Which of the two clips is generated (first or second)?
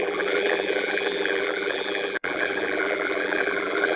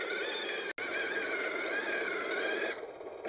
first